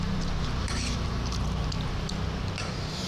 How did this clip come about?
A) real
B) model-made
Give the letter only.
A